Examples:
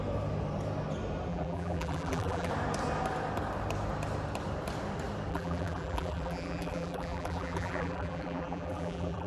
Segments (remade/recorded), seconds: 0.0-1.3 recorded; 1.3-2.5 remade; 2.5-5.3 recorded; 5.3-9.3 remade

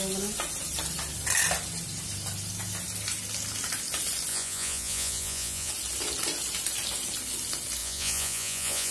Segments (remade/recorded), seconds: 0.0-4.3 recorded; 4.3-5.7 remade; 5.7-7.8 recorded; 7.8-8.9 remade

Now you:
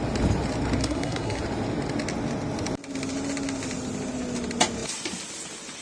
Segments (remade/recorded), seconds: 0.0-0.8 recorded; 0.8-1.4 remade; 1.4-5.8 recorded